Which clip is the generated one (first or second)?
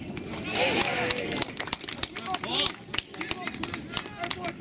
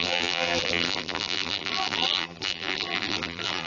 second